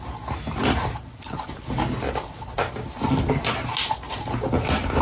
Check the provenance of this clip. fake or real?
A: real